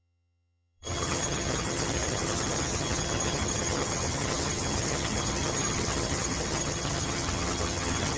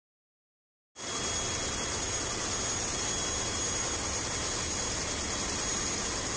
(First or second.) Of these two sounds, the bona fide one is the second